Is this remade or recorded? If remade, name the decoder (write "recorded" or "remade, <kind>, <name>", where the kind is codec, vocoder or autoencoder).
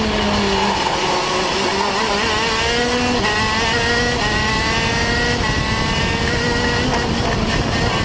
recorded